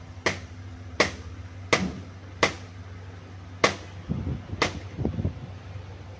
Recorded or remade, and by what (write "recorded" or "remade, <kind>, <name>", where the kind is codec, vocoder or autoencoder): recorded